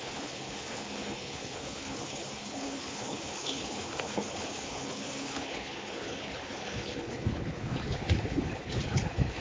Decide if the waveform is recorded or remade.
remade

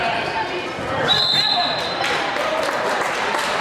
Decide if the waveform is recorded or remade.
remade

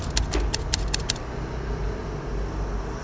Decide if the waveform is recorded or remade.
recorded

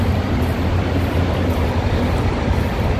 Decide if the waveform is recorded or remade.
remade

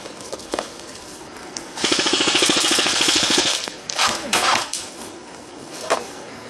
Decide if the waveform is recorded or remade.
remade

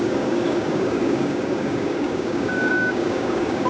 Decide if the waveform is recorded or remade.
remade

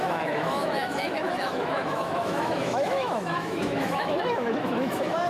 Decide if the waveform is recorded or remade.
remade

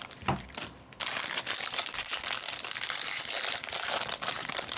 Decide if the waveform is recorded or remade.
remade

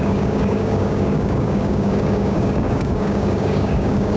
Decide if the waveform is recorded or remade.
remade